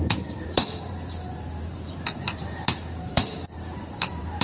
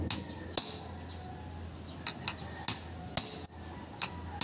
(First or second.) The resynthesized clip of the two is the first